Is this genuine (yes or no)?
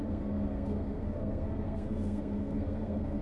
no